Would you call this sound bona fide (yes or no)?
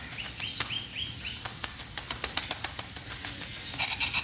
yes